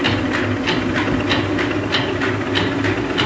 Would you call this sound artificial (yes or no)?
no